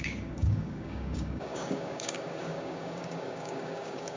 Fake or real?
fake